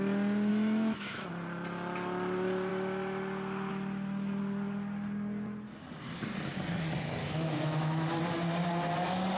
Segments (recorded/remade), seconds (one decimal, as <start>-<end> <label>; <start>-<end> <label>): 0.0-0.5 recorded; 0.5-1.3 remade; 1.3-7.2 recorded; 7.2-8.2 remade; 8.2-9.4 recorded